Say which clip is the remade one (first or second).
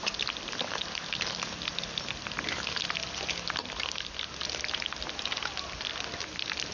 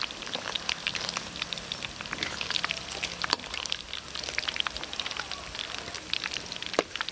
second